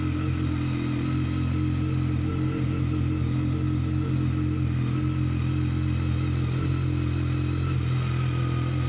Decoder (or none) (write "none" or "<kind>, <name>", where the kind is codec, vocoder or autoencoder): none